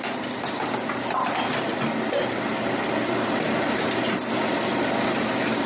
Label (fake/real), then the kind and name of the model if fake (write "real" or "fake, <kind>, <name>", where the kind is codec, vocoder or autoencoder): real